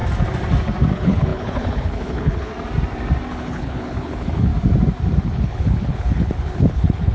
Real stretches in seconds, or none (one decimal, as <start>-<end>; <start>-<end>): 0.0-0.9; 2.5-3.3; 4.5-5.2

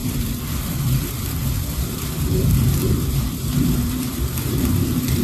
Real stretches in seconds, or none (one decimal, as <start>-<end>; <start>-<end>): none

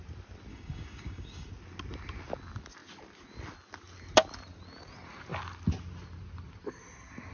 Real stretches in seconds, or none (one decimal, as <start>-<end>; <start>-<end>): 0.0-0.5; 1.5-7.3